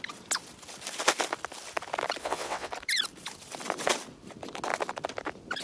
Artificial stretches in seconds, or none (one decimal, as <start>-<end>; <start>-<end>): 2.2-2.7

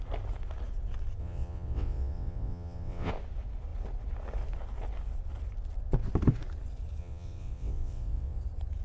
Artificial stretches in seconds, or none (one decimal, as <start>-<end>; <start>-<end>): 1.2-3.1; 7.0-8.4

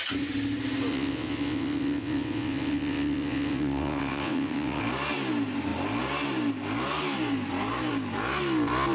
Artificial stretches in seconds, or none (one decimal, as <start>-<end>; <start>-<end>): 0.9-4.8

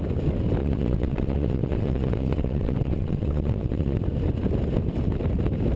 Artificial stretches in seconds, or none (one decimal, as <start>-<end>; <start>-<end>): 0.6-4.0

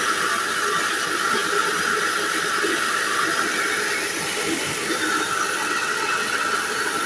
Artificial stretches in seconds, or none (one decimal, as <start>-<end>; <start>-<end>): 5.6-6.6